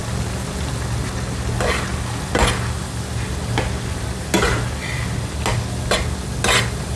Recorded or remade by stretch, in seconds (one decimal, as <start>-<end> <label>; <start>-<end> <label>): 0.0-7.0 recorded